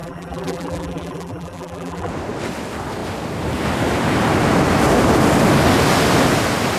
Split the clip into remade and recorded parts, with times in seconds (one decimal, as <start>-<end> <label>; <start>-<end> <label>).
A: 0.0-2.1 remade; 2.1-6.8 recorded